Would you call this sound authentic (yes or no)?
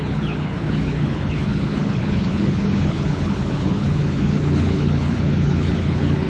no